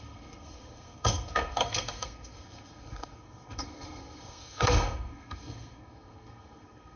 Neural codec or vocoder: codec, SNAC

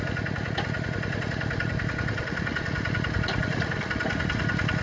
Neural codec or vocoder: none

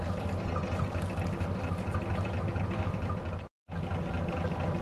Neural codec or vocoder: none